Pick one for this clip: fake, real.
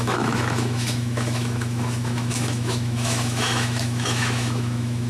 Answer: fake